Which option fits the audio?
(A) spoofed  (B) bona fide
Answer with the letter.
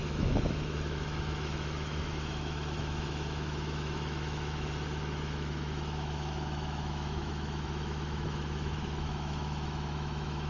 A